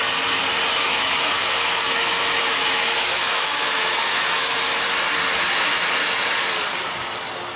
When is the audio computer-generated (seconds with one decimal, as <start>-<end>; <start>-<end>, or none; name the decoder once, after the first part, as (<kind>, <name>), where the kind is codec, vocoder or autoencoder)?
0.7-4.7 (autoencoder, DAC-VAE)